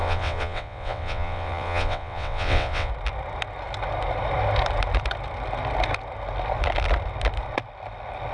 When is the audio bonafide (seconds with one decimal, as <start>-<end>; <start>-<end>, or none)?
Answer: 2.9-8.3